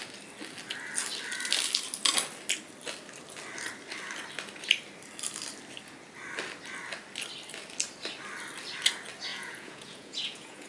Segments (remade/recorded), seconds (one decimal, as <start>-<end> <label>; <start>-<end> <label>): 0.0-9.3 recorded; 9.3-10.7 remade